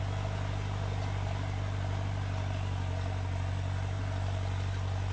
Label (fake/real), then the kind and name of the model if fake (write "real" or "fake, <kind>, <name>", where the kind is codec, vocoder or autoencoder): real